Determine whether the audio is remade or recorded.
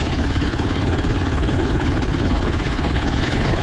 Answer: remade